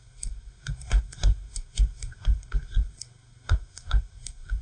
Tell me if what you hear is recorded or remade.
remade